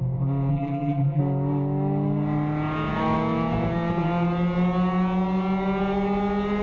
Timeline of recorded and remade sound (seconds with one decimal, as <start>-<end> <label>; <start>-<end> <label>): 0.0-0.5 recorded; 0.5-1.2 remade; 1.2-6.6 recorded